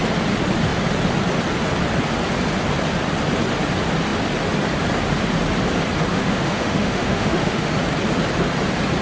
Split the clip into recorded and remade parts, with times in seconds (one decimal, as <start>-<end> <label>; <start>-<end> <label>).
0.0-6.1 recorded; 6.1-7.7 remade; 7.7-9.0 recorded